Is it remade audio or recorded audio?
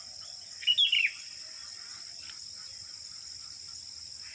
recorded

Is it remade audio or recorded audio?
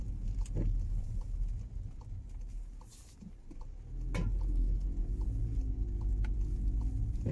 recorded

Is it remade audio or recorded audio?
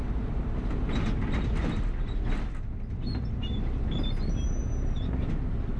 recorded